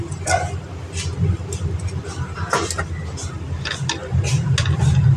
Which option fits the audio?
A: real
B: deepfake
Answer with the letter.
A